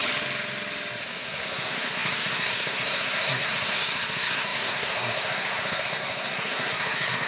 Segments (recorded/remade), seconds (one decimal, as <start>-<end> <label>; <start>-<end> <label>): 0.0-1.0 recorded; 1.0-7.3 remade